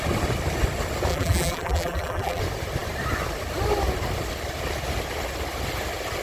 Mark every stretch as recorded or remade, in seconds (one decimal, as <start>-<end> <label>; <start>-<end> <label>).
0.0-1.1 recorded; 1.1-2.4 remade; 2.4-6.2 recorded

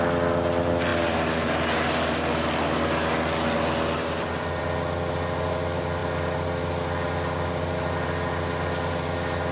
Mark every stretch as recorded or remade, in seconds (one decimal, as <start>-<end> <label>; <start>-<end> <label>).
0.0-9.5 recorded

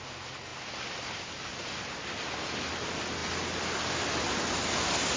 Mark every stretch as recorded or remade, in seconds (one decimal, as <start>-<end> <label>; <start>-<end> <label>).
0.0-5.2 recorded

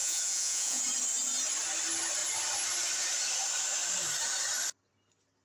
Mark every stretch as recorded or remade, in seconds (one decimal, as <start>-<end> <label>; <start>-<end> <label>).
0.0-0.8 remade; 0.8-5.4 recorded

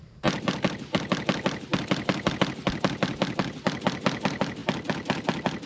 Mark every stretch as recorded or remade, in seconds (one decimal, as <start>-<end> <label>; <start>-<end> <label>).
0.0-5.7 remade